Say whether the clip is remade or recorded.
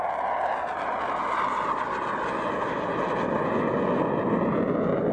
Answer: recorded